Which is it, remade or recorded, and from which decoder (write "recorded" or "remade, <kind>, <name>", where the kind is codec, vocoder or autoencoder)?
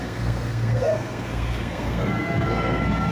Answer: remade, codec, SNAC